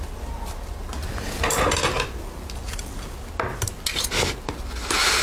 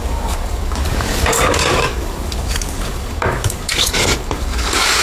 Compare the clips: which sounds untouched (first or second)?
first